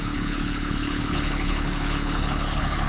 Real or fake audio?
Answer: fake